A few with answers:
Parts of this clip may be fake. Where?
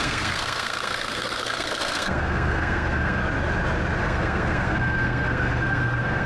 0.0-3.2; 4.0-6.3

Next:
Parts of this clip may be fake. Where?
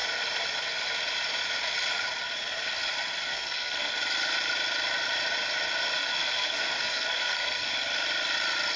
3.3-4.0; 6.0-7.7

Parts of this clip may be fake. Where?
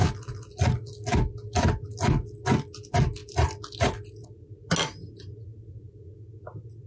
none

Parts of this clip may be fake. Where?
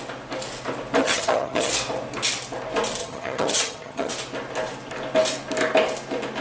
1.0-1.7; 3.0-4.1